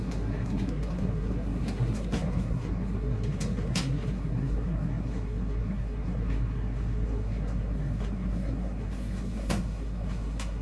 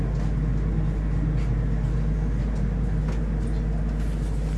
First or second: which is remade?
first